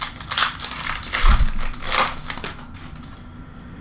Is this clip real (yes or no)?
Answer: yes